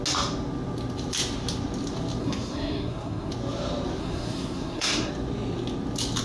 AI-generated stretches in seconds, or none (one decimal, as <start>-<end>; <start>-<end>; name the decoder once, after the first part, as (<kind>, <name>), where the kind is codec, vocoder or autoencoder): 2.2-3.3 (codec, SNAC); 4.0-5.1